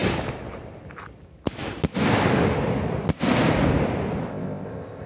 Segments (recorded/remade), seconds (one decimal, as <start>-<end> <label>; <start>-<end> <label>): 0.0-4.3 recorded; 4.3-5.1 remade